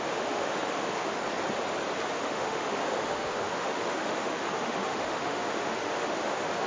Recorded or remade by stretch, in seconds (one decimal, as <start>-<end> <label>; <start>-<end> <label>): 0.0-1.2 remade; 1.2-2.1 recorded; 2.1-6.7 remade